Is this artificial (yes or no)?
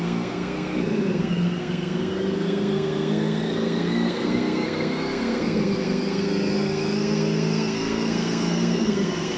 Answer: yes